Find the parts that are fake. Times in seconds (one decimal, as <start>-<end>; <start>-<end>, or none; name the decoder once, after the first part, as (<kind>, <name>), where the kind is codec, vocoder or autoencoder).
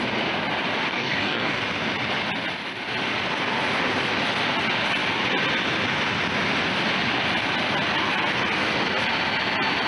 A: 0.9-1.6 (codec, DAC)